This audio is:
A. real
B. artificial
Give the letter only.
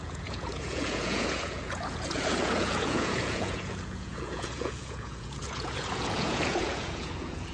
B